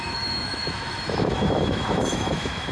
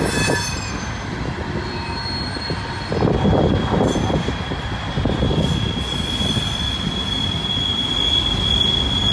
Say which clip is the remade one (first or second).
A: first